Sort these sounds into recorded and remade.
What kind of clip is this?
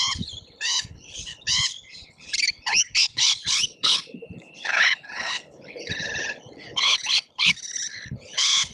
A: remade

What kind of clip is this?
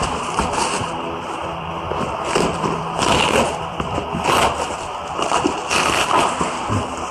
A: recorded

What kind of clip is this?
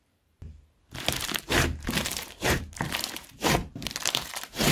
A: remade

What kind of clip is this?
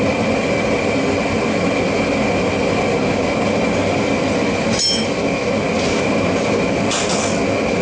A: recorded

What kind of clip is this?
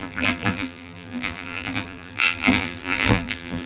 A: remade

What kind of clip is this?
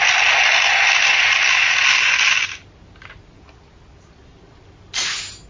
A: recorded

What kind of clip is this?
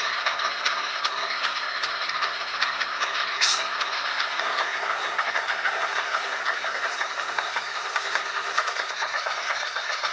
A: remade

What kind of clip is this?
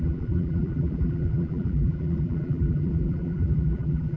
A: remade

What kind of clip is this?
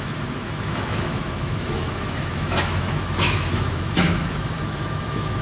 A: remade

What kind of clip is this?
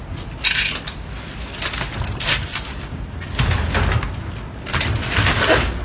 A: recorded